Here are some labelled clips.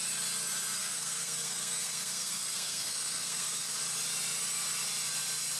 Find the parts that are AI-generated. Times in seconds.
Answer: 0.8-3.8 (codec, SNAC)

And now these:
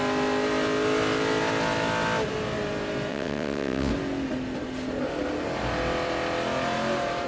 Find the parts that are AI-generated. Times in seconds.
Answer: 3.1-3.9 (vocoder, WaveNeXt)

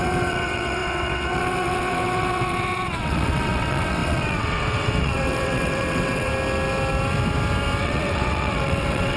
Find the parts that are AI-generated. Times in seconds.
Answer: 0.0-6.3 (vocoder, WaveNeXt); 7.8-9.2

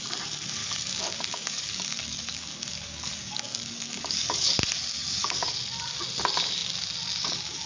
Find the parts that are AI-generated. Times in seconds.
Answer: 0.6-4.5 (codec, DAC); 5.0-5.6

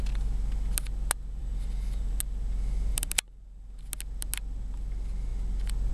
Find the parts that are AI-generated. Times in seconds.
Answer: 1.4-2.2 (vocoder, BigVGAN v2); 2.9-3.8

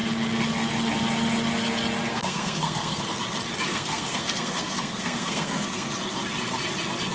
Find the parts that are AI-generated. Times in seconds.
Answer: 2.1-3.0 (codec, SNAC); 3.7-5.9